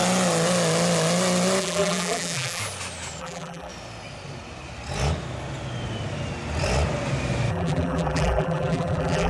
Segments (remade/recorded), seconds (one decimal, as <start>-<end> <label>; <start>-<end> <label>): 0.0-1.6 recorded; 1.6-2.6 remade; 2.6-3.2 recorded; 3.2-3.7 remade; 3.7-7.5 recorded; 7.5-9.3 remade